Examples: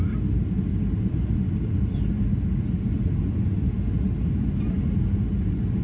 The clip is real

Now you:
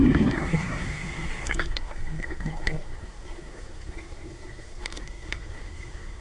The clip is fake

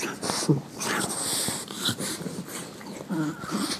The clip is real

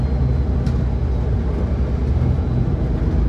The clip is real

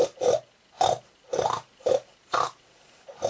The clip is real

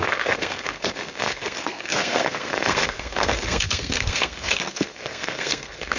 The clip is fake